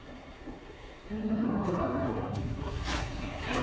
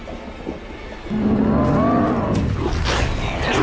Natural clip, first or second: second